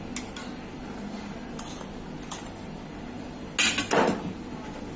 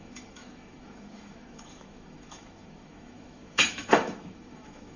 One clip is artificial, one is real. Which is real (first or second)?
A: first